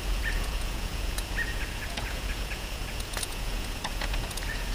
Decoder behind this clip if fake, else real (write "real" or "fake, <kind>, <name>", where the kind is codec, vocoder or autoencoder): fake, vocoder, Vocos